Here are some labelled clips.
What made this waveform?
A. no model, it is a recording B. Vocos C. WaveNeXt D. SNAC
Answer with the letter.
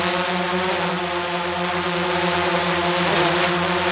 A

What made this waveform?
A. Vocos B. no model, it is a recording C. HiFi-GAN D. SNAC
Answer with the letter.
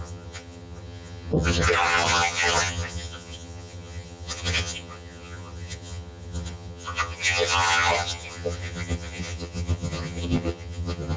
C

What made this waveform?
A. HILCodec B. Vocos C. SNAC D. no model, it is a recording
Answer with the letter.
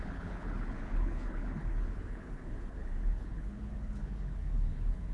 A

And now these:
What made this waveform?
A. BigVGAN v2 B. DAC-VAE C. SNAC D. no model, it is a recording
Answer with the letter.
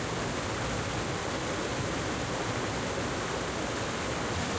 D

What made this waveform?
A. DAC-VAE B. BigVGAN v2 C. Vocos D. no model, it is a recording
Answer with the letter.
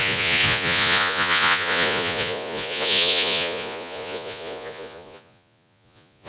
C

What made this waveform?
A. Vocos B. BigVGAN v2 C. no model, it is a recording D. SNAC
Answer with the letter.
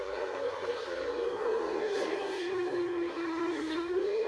D